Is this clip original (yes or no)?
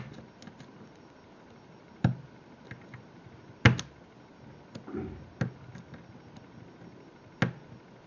yes